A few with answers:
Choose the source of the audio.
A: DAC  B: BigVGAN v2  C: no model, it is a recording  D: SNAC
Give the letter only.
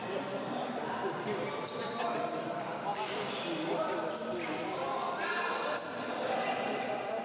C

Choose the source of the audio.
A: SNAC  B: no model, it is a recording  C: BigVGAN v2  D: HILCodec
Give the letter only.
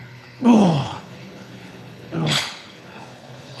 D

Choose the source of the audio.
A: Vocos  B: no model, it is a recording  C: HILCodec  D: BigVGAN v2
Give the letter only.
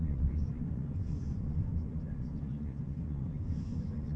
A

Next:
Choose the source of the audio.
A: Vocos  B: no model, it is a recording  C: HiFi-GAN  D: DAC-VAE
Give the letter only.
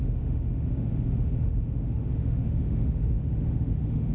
D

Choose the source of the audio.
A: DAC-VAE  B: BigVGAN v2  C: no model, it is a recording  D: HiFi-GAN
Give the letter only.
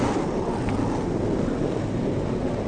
C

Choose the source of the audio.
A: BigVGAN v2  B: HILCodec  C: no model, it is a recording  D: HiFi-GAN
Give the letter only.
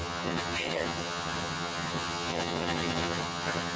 D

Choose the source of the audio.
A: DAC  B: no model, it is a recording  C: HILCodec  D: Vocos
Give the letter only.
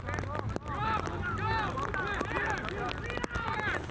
B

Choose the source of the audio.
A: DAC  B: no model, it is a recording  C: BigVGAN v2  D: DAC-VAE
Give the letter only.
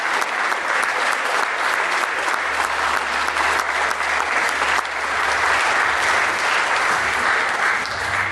B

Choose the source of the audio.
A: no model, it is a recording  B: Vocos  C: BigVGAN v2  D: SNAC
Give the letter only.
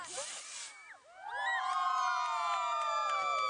A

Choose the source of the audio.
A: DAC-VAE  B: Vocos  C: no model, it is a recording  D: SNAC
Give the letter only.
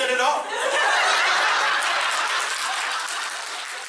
C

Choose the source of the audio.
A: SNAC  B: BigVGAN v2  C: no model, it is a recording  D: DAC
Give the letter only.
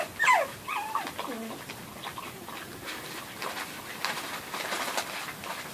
C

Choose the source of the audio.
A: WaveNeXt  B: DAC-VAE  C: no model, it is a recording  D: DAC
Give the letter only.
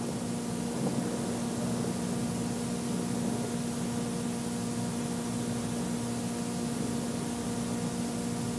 C